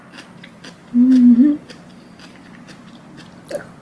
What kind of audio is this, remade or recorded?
recorded